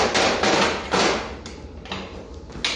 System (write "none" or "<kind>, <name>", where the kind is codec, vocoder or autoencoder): none